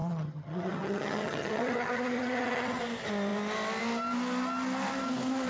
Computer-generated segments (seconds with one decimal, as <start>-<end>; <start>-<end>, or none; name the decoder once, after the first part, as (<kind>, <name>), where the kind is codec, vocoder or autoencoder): 0.0-2.8 (vocoder, HiFi-GAN)